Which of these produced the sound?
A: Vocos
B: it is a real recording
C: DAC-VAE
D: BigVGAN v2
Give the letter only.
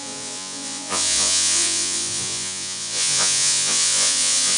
A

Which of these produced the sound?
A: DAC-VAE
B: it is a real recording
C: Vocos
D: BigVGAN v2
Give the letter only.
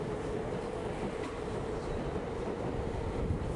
B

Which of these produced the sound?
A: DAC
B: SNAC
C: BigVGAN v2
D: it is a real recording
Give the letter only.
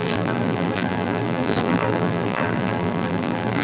C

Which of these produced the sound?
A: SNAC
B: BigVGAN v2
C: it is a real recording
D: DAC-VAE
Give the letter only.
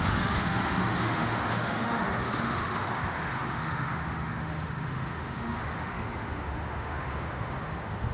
D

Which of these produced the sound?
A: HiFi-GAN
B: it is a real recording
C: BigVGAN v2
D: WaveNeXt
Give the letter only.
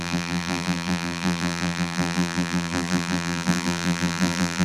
C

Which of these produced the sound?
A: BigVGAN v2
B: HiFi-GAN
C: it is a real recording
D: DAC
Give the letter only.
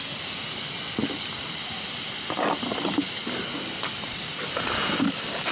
C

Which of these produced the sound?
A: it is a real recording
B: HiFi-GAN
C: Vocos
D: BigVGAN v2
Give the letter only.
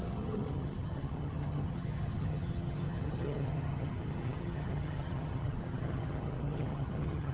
B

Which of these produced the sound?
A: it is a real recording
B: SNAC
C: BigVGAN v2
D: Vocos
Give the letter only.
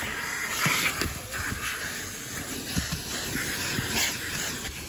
A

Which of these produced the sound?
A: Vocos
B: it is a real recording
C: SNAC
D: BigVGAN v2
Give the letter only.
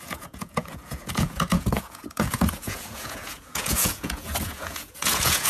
A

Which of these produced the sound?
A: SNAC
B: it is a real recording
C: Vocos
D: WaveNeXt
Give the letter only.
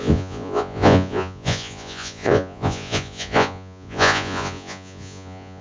C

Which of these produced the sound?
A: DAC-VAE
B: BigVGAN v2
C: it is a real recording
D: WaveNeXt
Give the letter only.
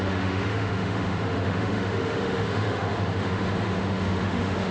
A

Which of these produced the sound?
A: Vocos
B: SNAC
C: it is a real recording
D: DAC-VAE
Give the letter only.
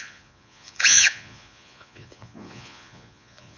A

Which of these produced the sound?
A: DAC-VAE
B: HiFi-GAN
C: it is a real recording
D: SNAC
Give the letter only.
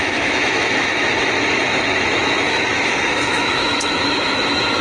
A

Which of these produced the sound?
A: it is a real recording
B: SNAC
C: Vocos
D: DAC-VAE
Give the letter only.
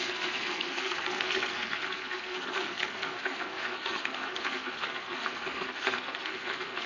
B